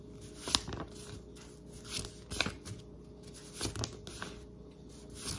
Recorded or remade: recorded